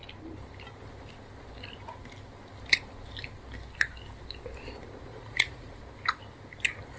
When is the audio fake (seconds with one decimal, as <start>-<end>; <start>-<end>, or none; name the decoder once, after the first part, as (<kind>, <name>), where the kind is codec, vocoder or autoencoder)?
5.1-5.8 (vocoder, Vocos)